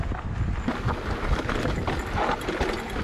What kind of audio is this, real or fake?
real